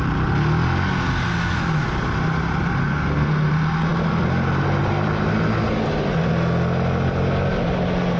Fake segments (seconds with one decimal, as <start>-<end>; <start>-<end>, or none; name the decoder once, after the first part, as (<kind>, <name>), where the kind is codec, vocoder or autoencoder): 2.8-3.5 (codec, SNAC)